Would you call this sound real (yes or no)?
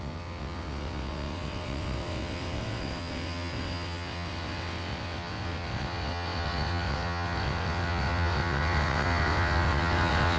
no